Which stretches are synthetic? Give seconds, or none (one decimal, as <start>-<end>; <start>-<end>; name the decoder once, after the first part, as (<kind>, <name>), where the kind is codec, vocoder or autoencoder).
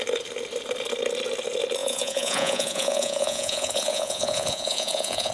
1.8-5.3 (vocoder, Vocos)